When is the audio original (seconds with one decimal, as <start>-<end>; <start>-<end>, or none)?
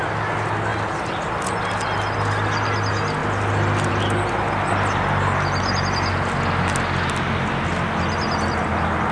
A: 0.0-9.1